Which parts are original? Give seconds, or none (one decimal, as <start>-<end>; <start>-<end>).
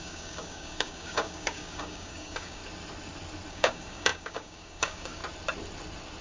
2.6-3.5; 5.2-6.2